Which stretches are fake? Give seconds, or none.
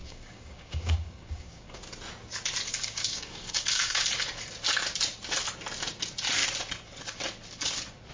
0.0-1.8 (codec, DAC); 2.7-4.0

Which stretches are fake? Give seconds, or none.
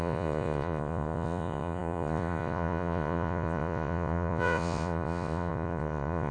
0.0-6.3 (vocoder, Vocos)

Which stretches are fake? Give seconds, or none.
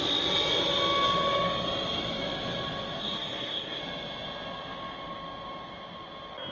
3.0-3.8 (codec, SNAC)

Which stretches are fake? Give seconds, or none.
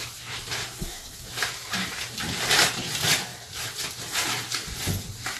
0.6-1.3 (codec, SNAC)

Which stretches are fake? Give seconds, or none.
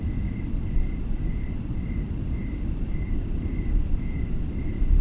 none